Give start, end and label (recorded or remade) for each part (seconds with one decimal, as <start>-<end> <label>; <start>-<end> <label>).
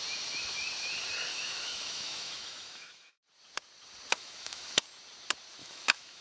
0.0-1.3 recorded; 1.3-3.2 remade; 3.2-4.1 recorded; 4.1-4.8 remade; 4.8-5.6 recorded; 5.6-6.2 remade